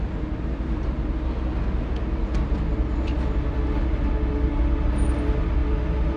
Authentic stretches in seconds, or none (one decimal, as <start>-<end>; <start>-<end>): 0.0-6.2